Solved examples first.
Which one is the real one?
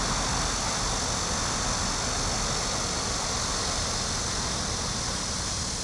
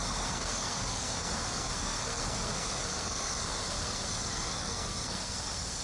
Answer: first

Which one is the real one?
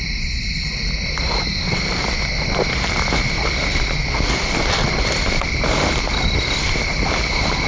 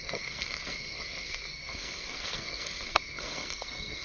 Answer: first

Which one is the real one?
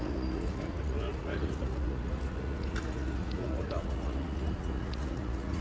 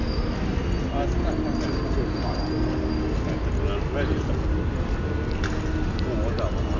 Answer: second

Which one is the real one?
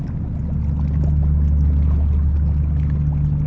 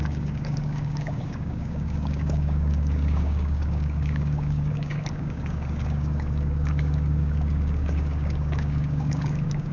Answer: first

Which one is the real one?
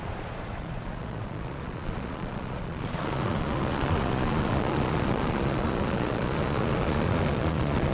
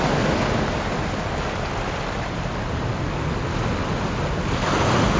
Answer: second